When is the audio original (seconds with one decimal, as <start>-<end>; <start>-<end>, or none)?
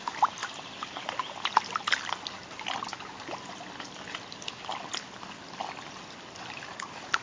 0.0-7.2